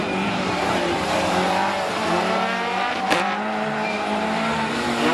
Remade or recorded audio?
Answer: remade